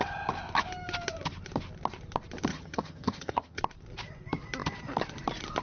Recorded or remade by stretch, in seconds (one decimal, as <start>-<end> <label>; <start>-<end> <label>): 0.0-2.5 recorded; 2.5-3.6 remade; 3.6-5.6 recorded